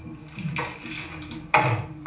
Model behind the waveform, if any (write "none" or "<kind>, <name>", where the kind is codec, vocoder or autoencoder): none